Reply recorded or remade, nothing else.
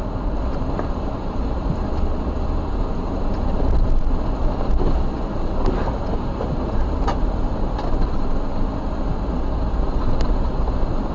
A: recorded